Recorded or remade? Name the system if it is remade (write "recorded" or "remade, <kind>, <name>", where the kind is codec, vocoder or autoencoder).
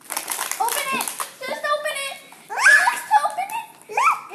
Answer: recorded